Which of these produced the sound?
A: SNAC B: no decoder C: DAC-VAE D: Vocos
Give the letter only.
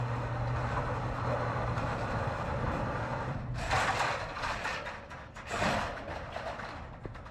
B